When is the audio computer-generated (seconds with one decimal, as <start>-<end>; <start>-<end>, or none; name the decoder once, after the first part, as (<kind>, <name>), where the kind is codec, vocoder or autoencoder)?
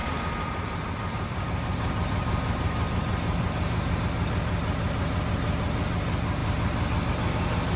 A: 0.0-4.0 (vocoder, BigVGAN v2)